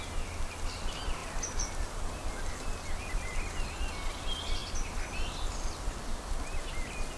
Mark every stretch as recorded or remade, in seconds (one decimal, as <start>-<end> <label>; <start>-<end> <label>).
0.0-3.0 recorded; 3.0-3.6 remade; 3.6-7.2 recorded